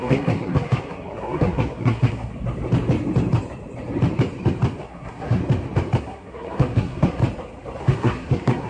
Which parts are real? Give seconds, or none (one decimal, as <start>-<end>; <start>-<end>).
2.3-4.8; 5.4-6.0; 7.2-7.8